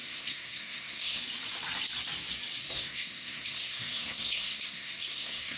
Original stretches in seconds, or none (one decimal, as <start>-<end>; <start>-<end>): 1.2-2.6